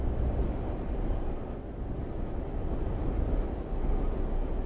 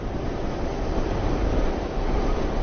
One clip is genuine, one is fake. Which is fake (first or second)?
second